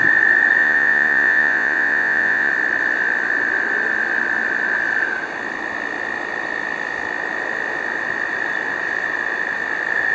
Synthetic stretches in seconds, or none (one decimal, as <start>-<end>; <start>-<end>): 0.6-2.5